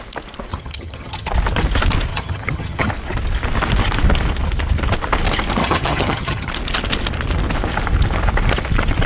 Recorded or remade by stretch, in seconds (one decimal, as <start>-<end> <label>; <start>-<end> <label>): 0.0-0.5 recorded; 0.5-1.3 remade; 1.3-2.1 recorded; 2.1-2.9 remade; 2.9-5.6 recorded; 5.6-6.5 remade; 6.5-9.1 recorded